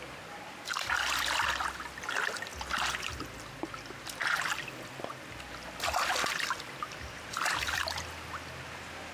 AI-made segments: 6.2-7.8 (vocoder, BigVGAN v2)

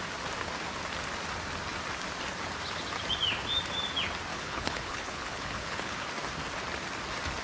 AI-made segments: 4.3-6.1 (codec, HILCodec)

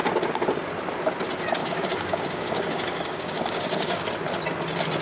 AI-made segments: 1.6-4.1 (codec, DAC)

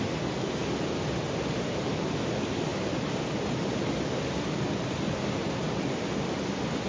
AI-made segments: none

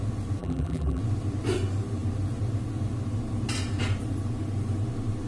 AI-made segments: 0.4-1.0 (vocoder, BigVGAN v2)

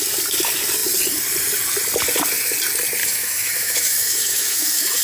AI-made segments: 3.0-5.0 (autoencoder, DAC-VAE)

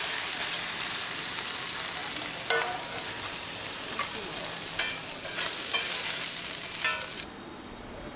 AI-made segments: none